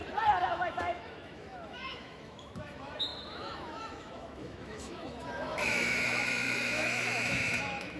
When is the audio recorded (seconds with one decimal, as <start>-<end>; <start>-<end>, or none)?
0.0-0.5